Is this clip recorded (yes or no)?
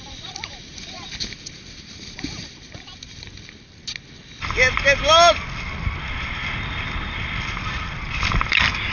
yes